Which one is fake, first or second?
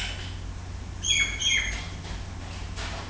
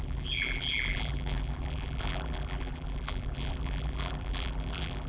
second